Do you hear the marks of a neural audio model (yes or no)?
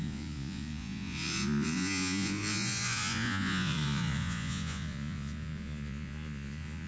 yes